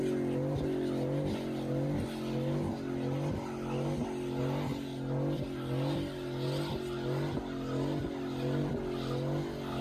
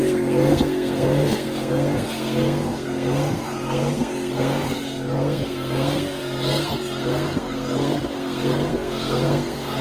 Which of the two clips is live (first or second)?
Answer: first